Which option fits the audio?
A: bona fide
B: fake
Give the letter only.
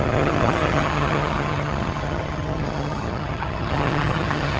B